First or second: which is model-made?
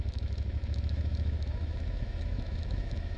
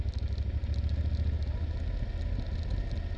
first